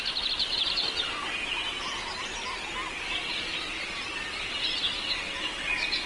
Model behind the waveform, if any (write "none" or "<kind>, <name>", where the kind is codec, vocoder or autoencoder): none